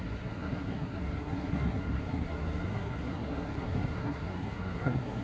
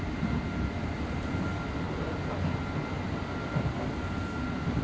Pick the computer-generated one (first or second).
first